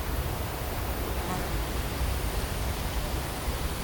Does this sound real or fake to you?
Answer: real